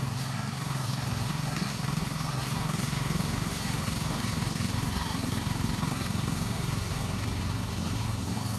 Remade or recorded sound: remade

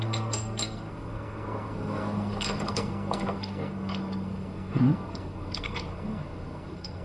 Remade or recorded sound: remade